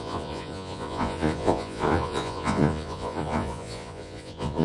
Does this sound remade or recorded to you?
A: remade